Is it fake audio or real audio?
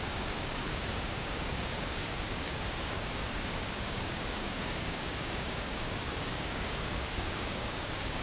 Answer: fake